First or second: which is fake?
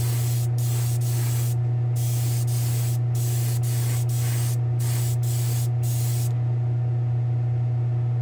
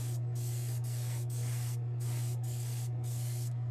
second